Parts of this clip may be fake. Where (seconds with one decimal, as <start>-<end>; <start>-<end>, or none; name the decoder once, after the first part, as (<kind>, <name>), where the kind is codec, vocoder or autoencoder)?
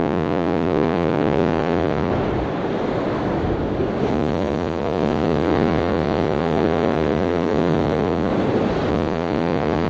0.0-2.1 (vocoder, Vocos); 4.1-8.3; 8.9-9.9